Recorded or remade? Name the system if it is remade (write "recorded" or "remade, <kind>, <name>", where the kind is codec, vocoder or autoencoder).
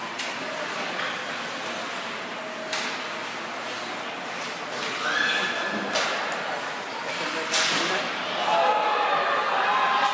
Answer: recorded